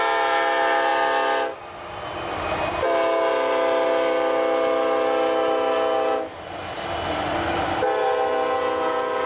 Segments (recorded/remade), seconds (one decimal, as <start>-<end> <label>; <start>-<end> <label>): 0.0-9.3 recorded